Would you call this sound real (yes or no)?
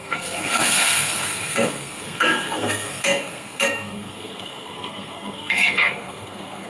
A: no